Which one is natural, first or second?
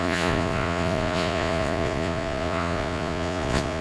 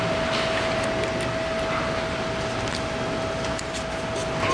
second